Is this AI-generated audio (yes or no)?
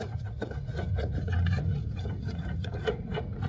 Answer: yes